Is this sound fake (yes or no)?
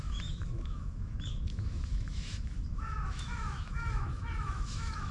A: yes